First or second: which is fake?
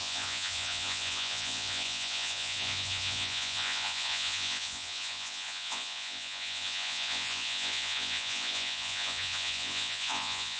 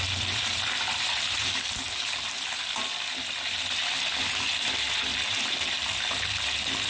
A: first